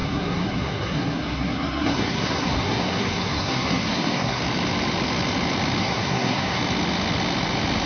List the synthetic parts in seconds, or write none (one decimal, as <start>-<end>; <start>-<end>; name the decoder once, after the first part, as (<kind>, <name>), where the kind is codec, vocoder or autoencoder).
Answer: 0.0-4.4 (codec, SNAC); 5.8-6.6